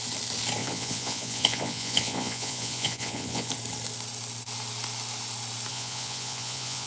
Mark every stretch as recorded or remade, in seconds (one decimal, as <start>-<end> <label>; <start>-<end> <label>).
0.0-0.6 recorded; 0.6-3.5 remade; 3.5-5.7 recorded; 5.7-6.9 remade

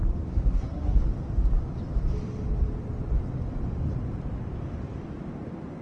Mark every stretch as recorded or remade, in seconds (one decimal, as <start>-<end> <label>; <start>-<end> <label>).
0.0-0.4 recorded; 0.4-1.0 remade; 1.0-5.8 recorded

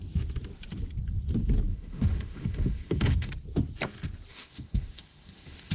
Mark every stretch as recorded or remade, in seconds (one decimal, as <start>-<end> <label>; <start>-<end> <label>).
0.0-1.7 recorded; 1.7-3.3 remade; 3.3-4.3 recorded; 4.3-5.7 remade

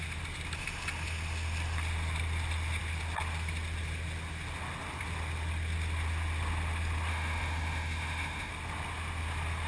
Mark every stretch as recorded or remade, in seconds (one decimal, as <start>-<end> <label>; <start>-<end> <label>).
0.0-7.1 recorded; 7.1-8.5 remade; 8.5-9.7 recorded